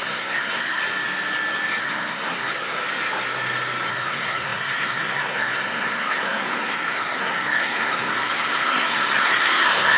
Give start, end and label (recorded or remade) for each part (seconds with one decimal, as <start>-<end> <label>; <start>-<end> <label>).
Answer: 0.0-0.8 remade; 0.8-1.8 recorded; 1.8-2.8 remade; 2.8-3.9 recorded; 3.9-10.0 remade